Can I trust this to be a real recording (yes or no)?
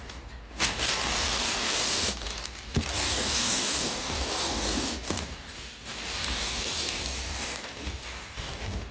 no